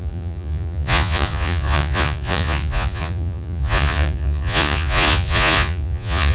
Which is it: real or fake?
fake